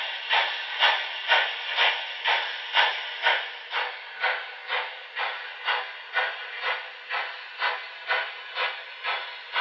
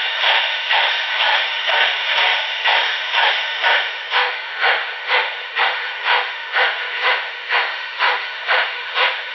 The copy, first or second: second